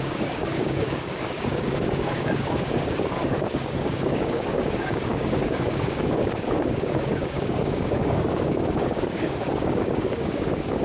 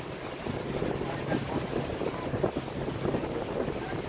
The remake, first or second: first